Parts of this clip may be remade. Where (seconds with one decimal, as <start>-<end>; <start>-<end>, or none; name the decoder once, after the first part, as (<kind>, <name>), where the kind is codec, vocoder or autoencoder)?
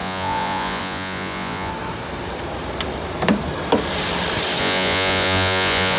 0.0-1.7 (vocoder, Vocos); 4.6-6.0